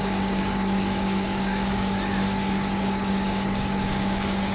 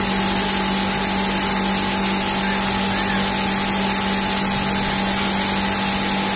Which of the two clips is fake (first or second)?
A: first